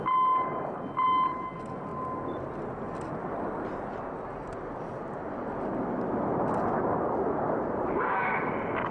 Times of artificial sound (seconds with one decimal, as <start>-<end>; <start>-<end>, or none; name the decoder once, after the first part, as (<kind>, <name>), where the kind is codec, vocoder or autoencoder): none